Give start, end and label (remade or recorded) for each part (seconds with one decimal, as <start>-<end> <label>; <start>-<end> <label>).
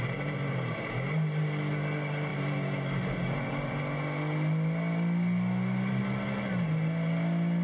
0.0-7.6 recorded